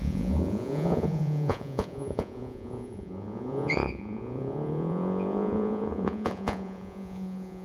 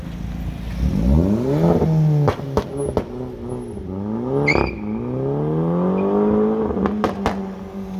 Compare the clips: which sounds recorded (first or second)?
second